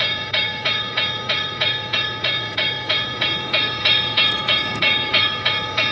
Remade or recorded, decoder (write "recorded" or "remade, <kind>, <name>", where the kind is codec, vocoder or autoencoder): remade, vocoder, Vocos